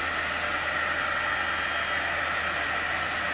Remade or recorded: recorded